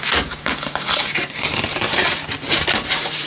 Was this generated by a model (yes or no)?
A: yes